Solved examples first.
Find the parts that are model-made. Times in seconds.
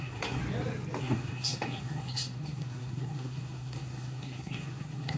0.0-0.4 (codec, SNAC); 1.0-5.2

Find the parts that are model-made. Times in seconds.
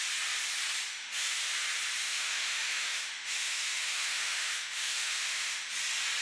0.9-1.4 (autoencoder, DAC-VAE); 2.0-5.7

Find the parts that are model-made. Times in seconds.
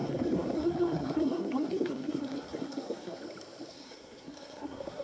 0.0-3.2 (codec, SNAC); 3.7-5.0